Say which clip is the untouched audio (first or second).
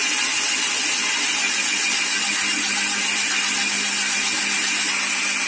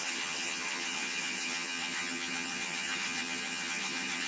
first